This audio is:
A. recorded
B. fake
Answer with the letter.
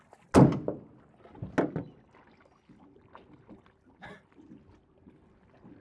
A